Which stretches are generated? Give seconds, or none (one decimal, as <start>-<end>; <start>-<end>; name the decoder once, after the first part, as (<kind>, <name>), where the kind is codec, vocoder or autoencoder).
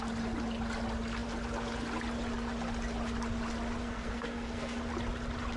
3.8-4.8 (codec, SNAC)